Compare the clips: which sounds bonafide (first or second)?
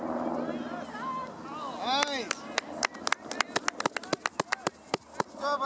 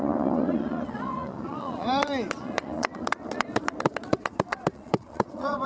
first